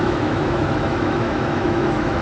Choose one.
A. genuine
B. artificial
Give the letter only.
B